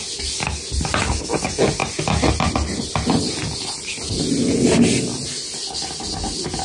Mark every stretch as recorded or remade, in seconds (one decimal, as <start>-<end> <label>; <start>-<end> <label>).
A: 0.0-6.6 recorded